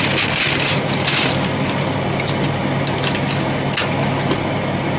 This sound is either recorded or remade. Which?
recorded